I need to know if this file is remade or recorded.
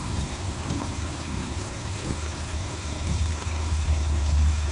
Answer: remade